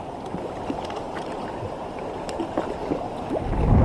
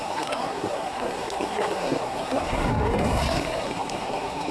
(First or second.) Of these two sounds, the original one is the first